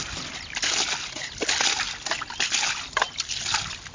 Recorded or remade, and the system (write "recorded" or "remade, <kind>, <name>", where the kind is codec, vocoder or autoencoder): recorded